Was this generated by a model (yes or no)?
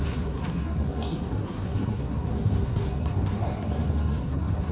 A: yes